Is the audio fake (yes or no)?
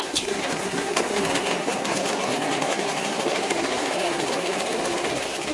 yes